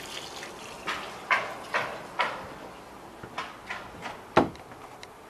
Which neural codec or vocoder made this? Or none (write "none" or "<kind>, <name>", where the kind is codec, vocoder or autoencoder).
none